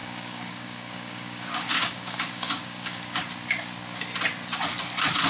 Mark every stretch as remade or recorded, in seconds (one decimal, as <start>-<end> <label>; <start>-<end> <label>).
0.0-3.2 remade; 3.2-5.3 recorded